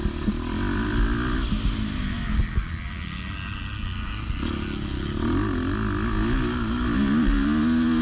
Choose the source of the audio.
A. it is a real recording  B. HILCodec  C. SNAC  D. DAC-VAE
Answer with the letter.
A